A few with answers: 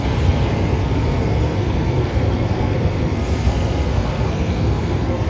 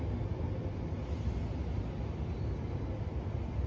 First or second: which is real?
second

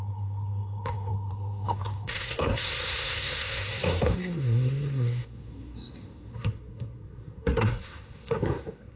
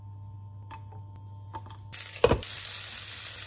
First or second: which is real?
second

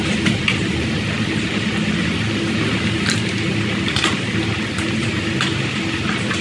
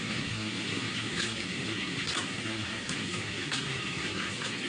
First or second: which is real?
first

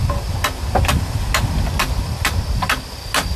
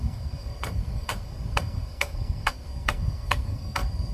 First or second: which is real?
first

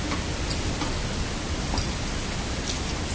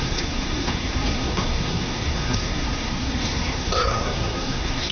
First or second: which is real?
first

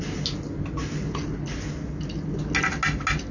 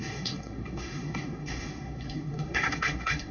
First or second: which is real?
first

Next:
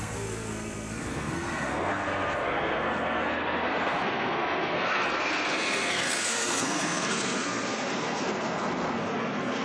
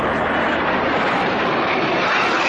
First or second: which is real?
second